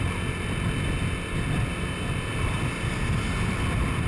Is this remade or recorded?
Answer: recorded